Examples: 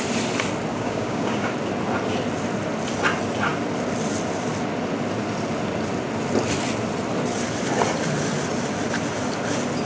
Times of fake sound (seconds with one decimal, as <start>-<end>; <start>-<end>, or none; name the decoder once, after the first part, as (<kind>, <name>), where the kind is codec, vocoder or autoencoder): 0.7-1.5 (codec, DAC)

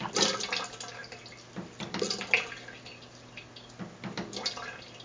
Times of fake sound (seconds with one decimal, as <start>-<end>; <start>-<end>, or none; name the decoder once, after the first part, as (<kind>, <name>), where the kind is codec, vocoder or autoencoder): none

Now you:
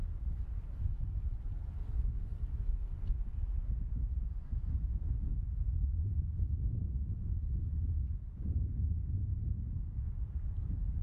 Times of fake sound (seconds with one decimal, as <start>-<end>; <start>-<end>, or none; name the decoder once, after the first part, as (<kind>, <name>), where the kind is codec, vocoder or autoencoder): 4.9-5.4 (codec, SNAC)

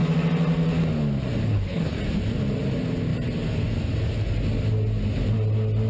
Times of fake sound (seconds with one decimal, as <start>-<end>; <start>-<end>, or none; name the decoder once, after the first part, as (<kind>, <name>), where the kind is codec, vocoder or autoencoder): 1.5-2.0 (codec, HILCodec)

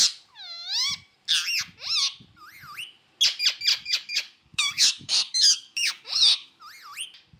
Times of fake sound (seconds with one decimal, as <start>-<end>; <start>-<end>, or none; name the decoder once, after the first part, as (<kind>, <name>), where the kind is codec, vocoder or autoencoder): 3.7-6.6 (codec, DAC)

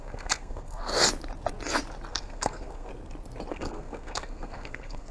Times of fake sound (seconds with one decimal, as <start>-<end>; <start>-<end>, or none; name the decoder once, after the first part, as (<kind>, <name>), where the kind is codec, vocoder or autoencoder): 0.0-0.9 (codec, SNAC); 2.1-2.9; 3.5-5.1